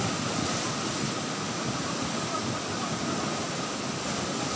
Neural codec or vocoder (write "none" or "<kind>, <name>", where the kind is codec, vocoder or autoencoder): none